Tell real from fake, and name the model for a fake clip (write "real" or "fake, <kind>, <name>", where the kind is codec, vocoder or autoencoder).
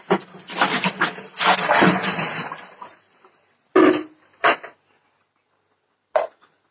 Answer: real